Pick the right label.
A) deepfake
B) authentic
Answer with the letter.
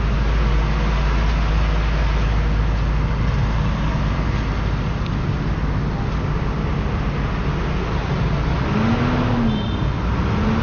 B